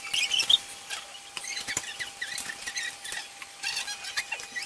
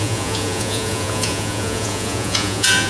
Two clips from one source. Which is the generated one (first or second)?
second